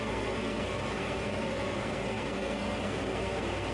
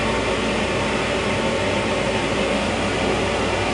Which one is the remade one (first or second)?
first